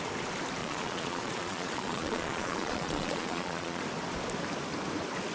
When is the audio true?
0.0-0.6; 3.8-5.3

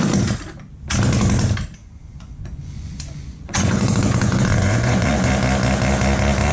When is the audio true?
0.0-1.8; 5.3-6.5